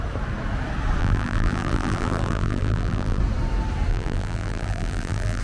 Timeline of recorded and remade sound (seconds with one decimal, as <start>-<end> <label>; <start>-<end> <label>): 0.0-1.0 recorded; 1.0-3.2 remade; 3.2-3.9 recorded; 3.9-5.4 remade